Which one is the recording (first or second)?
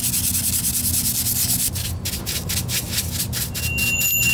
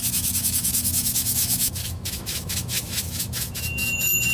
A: first